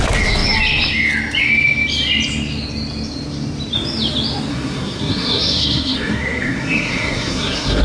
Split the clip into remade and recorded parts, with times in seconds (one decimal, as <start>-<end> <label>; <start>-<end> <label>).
0.0-4.5 recorded; 4.5-7.8 remade